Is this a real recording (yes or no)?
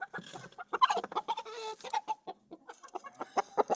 yes